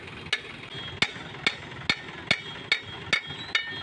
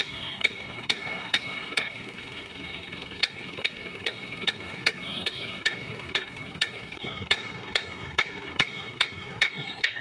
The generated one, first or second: second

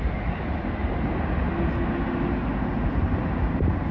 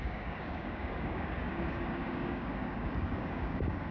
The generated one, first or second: second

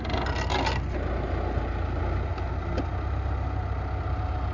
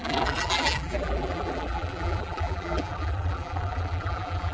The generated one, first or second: second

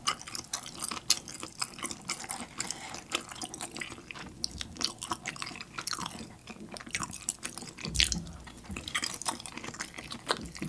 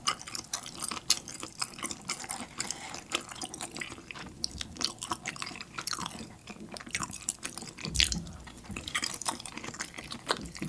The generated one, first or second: second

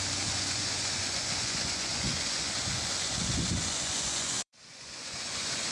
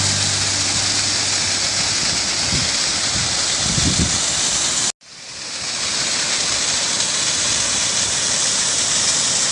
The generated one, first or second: first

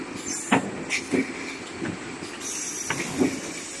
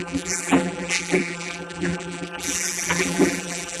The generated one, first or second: second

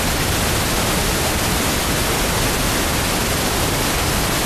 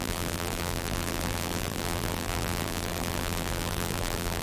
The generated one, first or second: second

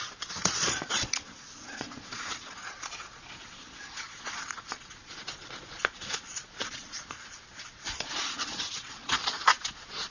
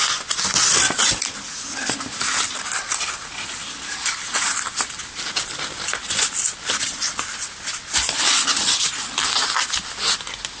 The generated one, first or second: first